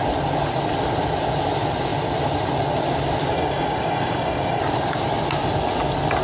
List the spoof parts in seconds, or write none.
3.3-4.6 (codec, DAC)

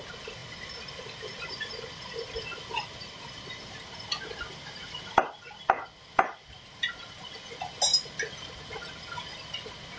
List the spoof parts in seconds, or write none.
none

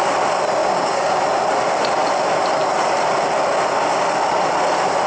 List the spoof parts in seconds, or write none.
0.6-1.2 (codec, DAC)

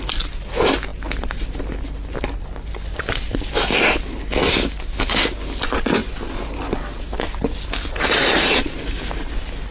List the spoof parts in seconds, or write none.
none

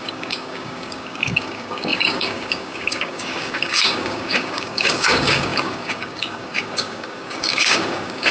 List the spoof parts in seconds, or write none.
0.0-8.3 (codec, DAC)

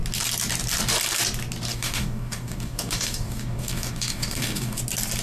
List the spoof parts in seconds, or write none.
1.7-4.8 (codec, DAC)

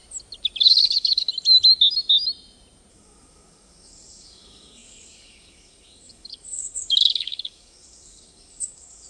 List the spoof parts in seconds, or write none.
0.6-1.3 (codec, DAC); 2.9-9.1

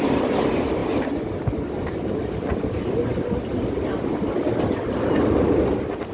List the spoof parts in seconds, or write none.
none